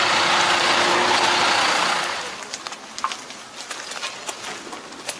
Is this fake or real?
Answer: real